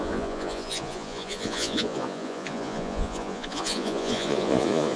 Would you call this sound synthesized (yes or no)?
yes